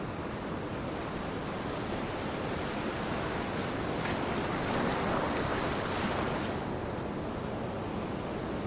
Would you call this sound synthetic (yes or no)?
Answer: no